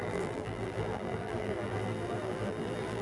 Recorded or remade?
remade